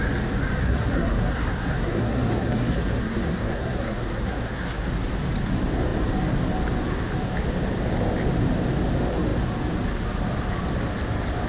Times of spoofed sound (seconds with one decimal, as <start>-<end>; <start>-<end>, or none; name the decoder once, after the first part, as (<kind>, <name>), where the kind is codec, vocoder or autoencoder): 0.6-4.9 (codec, SNAC)